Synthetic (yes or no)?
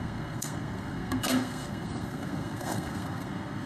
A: yes